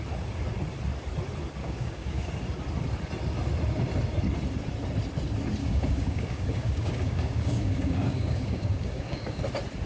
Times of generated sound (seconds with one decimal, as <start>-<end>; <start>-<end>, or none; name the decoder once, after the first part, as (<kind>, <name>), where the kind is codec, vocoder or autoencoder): 1.6-2.3 (codec, DAC); 5.6-9.4